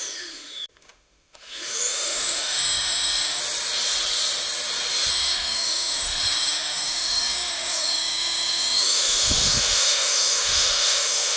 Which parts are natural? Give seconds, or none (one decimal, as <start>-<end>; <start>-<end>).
3.4-5.1